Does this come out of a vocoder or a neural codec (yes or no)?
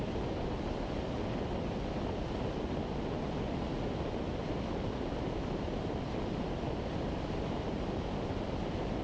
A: no